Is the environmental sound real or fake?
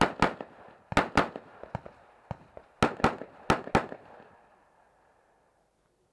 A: real